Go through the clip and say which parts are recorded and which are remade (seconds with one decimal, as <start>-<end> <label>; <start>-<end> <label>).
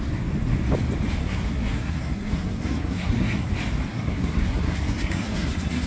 0.0-1.2 recorded; 1.2-3.5 remade; 3.5-3.9 recorded; 3.9-5.9 remade